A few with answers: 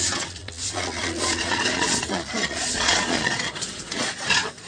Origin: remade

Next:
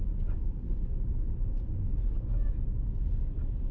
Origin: recorded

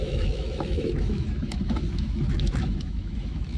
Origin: remade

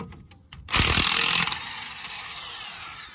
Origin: recorded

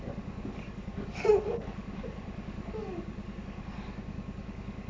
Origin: remade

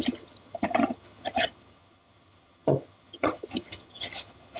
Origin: remade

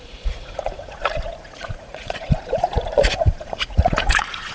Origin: remade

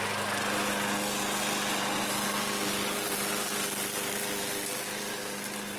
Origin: recorded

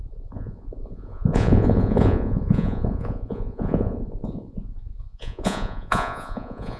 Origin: remade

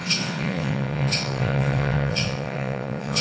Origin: remade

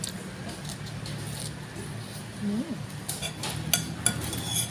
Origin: recorded